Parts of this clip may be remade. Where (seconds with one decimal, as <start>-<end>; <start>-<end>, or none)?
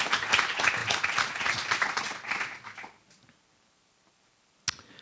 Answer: none